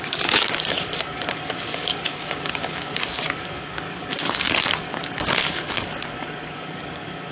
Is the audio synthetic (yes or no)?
yes